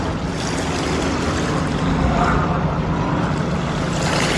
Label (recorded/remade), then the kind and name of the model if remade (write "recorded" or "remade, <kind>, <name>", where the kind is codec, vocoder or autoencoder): recorded